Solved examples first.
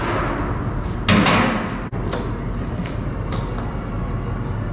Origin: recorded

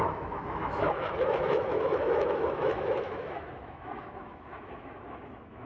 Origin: remade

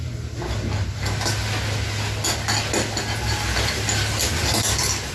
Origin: recorded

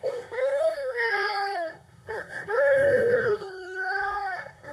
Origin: remade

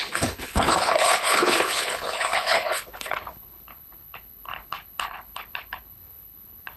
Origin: remade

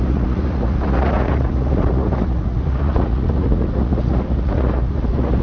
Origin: remade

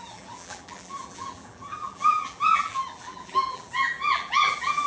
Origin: remade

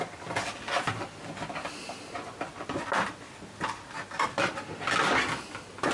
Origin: recorded